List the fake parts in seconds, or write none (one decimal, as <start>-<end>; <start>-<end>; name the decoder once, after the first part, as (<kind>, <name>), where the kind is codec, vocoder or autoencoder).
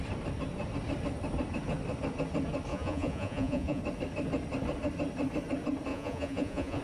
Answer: 2.7-3.8 (vocoder, Vocos); 5.9-6.8